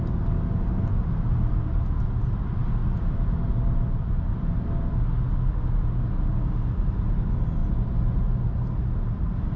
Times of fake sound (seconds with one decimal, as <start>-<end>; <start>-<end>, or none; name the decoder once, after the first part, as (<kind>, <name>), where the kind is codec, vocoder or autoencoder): none